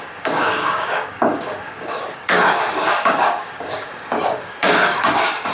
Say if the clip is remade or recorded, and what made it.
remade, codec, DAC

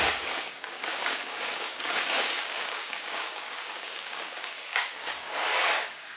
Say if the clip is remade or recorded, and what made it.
remade, codec, DAC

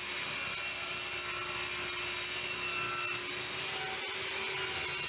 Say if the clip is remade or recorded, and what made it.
recorded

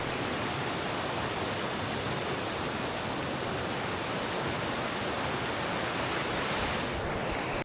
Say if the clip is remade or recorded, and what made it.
recorded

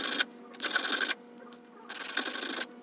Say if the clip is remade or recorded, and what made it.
recorded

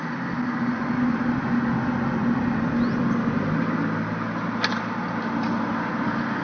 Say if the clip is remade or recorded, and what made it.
recorded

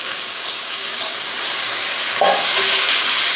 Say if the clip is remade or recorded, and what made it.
remade, codec, DAC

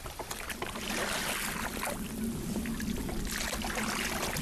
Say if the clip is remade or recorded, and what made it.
recorded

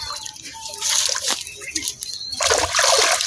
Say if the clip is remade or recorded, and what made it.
recorded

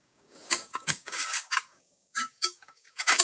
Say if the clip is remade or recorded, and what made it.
remade, codec, DAC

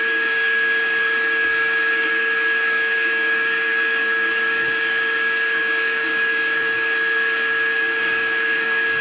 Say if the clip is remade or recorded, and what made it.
remade, codec, DAC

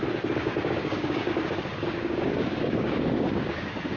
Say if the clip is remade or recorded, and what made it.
remade, codec, DAC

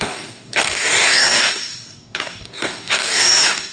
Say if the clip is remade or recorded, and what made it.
remade, codec, DAC